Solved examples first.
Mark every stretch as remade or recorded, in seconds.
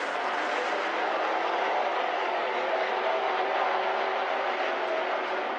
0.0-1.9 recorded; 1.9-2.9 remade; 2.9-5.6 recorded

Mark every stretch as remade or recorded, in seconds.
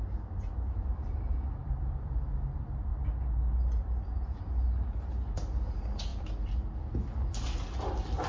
0.0-1.6 recorded; 1.6-2.3 remade; 2.3-6.1 recorded; 6.1-7.3 remade; 7.3-8.3 recorded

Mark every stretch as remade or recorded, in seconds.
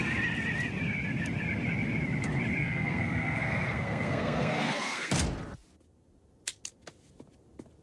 0.0-2.6 recorded; 2.6-5.1 remade; 5.1-7.8 recorded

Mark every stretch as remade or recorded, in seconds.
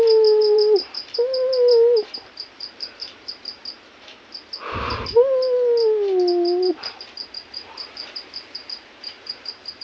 0.0-3.6 remade; 3.6-6.7 recorded; 6.7-9.8 remade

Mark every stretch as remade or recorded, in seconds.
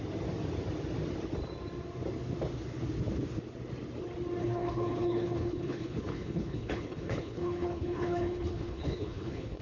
0.0-4.4 recorded; 4.4-9.6 remade